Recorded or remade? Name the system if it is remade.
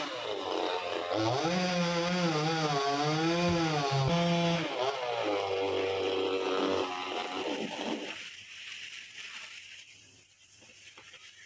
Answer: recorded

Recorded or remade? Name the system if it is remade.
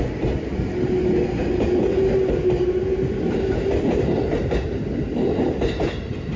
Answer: recorded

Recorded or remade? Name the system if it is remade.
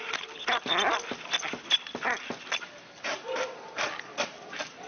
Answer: recorded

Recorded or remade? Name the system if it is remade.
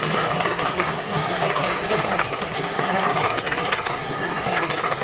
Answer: remade, codec, SNAC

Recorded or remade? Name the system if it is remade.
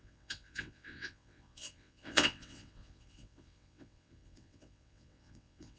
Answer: remade, vocoder, WaveNeXt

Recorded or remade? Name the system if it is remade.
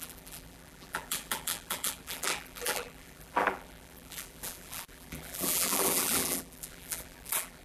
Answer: remade, vocoder, BigVGAN v2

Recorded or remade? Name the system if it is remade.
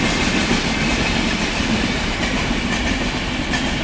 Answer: recorded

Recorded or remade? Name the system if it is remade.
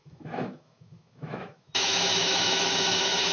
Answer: remade, autoencoder, DAC-VAE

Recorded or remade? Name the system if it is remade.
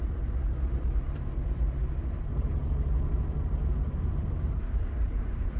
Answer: remade, vocoder, BigVGAN v2